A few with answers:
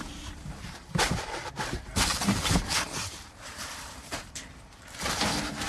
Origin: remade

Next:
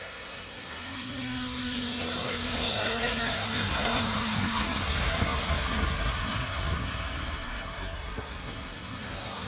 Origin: remade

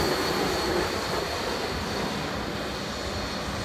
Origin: recorded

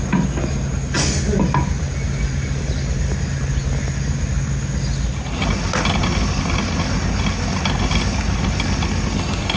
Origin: recorded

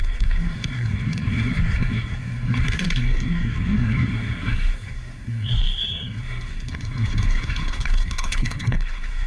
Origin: remade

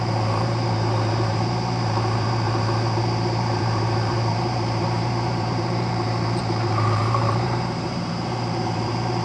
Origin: remade